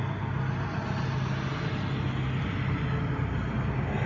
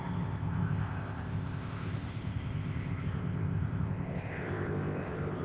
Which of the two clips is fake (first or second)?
second